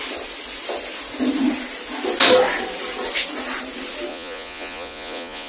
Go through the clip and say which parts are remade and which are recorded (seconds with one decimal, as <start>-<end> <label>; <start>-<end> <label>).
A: 0.0-4.1 recorded; 4.1-5.5 remade